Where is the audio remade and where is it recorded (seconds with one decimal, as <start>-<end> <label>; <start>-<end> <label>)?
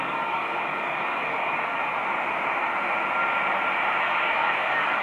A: 0.0-1.8 remade; 1.8-4.0 recorded; 4.0-5.0 remade